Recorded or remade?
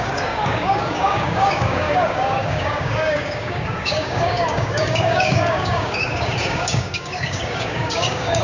remade